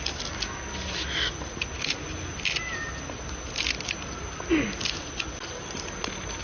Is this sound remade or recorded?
recorded